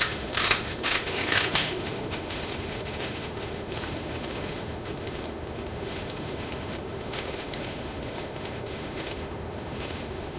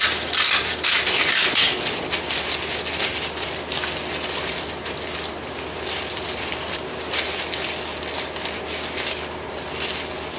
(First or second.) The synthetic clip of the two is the first